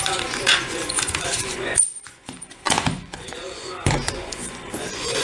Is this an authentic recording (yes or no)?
no